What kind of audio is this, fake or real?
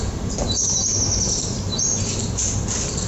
real